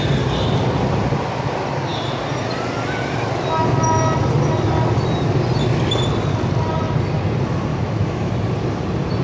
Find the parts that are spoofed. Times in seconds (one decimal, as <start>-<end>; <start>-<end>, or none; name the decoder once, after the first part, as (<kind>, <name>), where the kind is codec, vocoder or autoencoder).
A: 7.7-8.3 (autoencoder, DAC-VAE)